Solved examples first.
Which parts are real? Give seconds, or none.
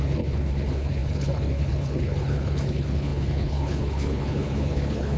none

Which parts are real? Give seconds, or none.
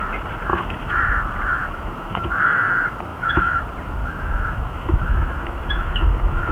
0.0-0.5; 1.0-1.6; 2.3-3.1; 3.6-4.0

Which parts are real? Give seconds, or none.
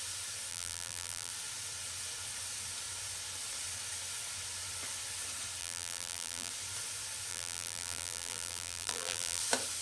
0.0-0.5; 1.3-5.6; 6.5-7.3; 9.4-9.8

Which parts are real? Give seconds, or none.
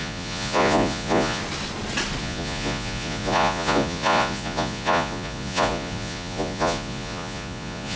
1.4-2.2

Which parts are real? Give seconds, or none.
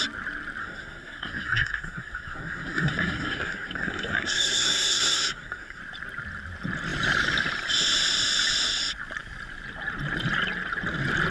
0.0-0.6; 5.8-11.3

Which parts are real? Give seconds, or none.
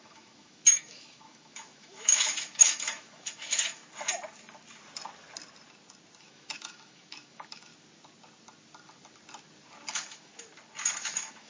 3.8-6.2; 7.7-9.9; 10.3-10.9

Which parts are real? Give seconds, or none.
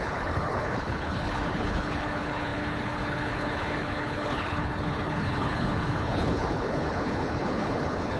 none